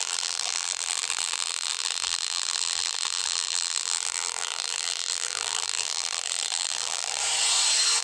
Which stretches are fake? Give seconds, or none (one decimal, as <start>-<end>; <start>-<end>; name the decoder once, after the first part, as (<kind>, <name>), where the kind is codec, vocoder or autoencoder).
0.0-7.2 (vocoder, BigVGAN v2)